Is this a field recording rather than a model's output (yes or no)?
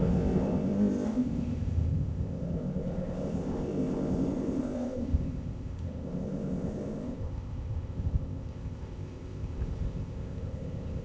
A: no